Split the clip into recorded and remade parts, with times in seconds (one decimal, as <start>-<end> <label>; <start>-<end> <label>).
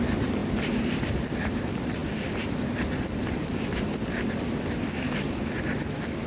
0.0-6.3 recorded